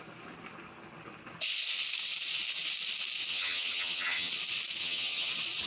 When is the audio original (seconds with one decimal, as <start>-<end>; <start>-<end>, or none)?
0.0-3.3; 4.3-4.8; 5.3-5.7